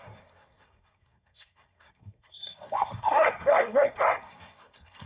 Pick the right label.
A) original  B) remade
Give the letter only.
B